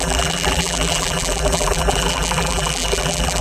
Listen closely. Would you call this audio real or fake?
fake